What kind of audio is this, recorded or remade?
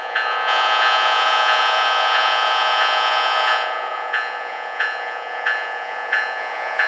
remade